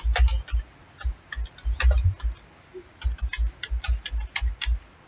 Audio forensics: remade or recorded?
recorded